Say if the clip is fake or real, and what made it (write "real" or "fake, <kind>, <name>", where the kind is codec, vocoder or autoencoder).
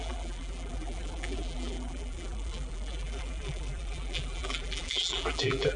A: fake, vocoder, BigVGAN v2